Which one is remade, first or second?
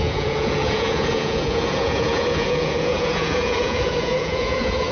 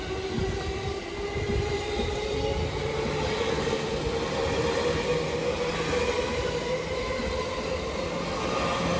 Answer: first